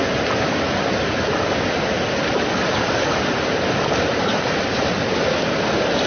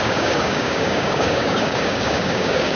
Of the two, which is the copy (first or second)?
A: second